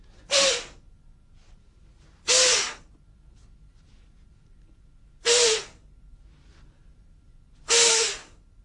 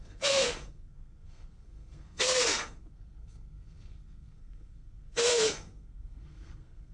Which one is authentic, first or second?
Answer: first